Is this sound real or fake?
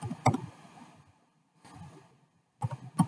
real